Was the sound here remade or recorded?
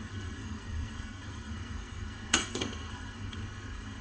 remade